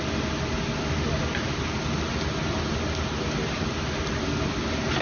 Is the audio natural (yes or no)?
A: yes